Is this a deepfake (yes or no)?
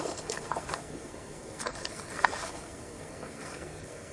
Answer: yes